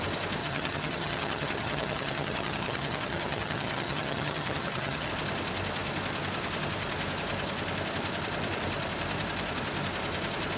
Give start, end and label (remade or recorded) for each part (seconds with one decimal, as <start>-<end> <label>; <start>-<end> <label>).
0.0-0.4 recorded; 0.4-5.1 remade; 5.1-10.6 recorded

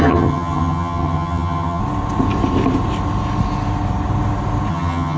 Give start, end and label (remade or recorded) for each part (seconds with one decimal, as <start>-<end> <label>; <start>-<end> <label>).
0.0-1.8 remade; 1.8-4.7 recorded; 4.7-5.2 remade

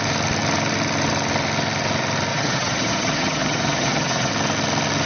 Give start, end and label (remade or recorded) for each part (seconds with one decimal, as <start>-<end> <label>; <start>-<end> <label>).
0.0-2.3 recorded; 2.3-4.3 remade; 4.3-5.1 recorded

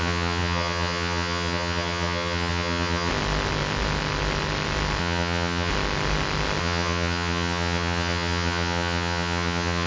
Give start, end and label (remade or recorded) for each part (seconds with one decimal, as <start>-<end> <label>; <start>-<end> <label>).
0.0-3.1 remade; 3.1-5.0 recorded; 5.0-5.7 remade; 5.7-6.6 recorded; 6.6-9.9 remade

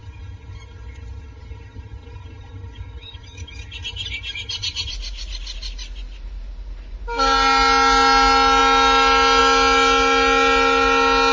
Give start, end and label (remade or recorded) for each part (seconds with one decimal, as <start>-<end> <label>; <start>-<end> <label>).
0.0-4.9 remade; 4.9-11.3 recorded

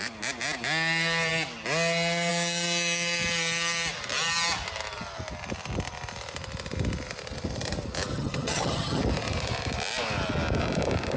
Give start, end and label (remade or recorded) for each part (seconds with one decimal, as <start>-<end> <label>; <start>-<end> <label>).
0.0-8.1 recorded; 8.1-9.0 remade; 9.0-11.2 recorded

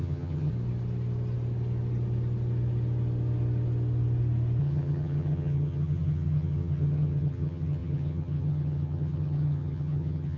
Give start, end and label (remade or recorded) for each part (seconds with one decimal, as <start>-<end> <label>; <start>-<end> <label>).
0.0-0.5 remade; 0.5-4.6 recorded; 4.6-10.4 remade

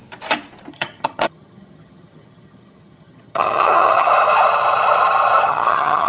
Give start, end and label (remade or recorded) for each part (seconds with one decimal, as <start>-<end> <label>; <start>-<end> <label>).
0.0-0.7 recorded; 0.7-4.1 remade; 4.1-5.5 recorded; 5.5-6.1 remade